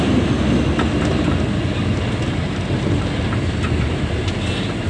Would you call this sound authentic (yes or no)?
yes